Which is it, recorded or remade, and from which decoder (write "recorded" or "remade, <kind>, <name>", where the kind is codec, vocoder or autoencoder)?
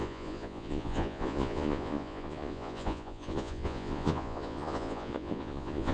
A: remade, vocoder, Vocos